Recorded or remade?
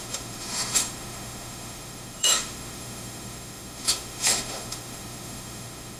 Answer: remade